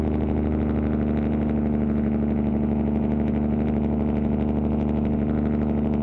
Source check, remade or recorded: remade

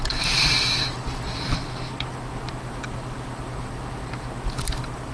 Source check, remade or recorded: recorded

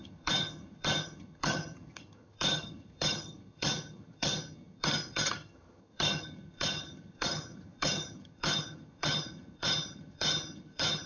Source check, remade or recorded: remade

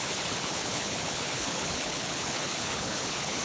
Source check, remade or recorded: remade